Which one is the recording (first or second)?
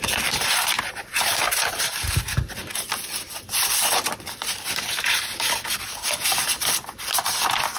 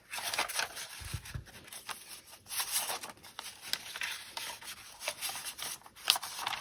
second